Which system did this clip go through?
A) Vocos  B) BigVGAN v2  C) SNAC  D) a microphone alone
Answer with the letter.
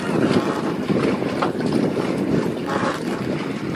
D